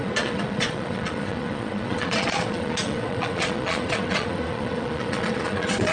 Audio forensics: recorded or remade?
remade